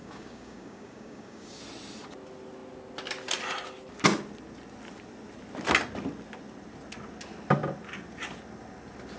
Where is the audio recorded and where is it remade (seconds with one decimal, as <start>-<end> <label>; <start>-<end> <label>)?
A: 0.0-1.6 remade; 1.6-9.2 recorded